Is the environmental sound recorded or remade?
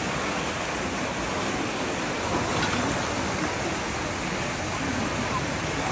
recorded